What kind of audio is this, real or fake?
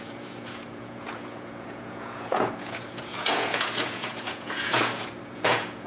fake